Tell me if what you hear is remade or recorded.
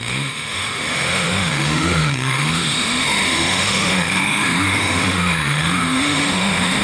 remade